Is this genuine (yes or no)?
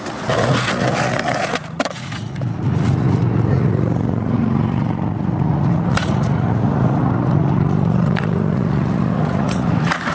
no